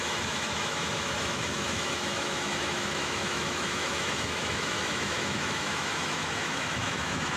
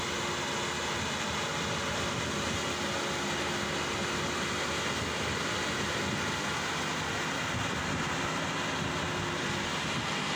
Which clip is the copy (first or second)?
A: first